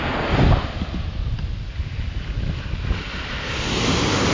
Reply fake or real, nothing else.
real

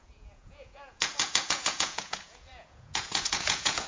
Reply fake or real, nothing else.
fake